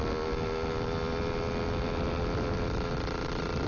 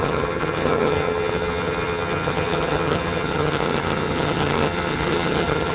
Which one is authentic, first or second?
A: first